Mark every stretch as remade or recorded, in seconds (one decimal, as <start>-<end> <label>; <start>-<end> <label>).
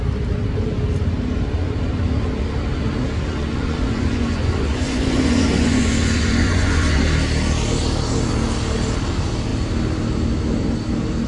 0.0-3.3 recorded; 3.3-7.0 remade; 7.0-11.3 recorded